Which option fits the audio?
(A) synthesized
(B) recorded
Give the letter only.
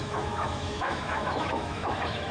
A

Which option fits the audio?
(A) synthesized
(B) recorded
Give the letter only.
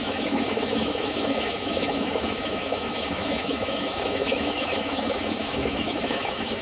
A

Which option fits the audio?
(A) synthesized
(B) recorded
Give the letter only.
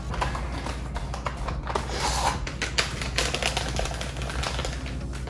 B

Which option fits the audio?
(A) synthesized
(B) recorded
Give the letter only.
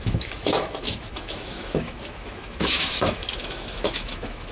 A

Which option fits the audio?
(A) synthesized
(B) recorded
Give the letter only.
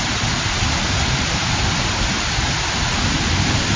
B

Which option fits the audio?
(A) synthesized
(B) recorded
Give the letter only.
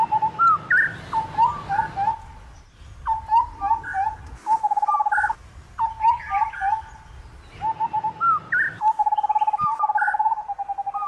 B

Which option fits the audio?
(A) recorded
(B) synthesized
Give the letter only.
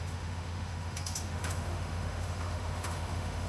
B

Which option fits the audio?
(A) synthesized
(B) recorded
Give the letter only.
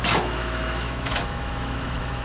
A